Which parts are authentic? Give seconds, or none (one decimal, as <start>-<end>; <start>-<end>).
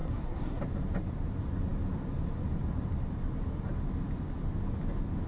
0.6-5.3